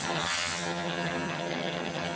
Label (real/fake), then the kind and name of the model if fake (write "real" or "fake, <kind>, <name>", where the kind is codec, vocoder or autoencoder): fake, vocoder, HiFi-GAN